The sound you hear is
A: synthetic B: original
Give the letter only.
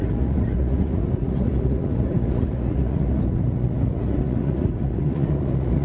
A